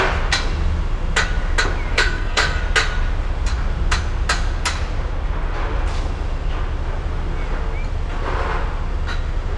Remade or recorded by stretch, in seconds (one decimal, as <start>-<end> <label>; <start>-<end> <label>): 0.0-1.9 recorded; 1.9-2.6 remade; 2.6-9.6 recorded